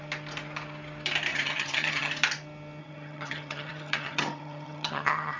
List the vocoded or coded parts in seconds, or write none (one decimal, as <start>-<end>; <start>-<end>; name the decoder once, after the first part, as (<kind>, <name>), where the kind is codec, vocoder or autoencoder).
1.3-2.1 (vocoder, HiFi-GAN); 2.8-5.4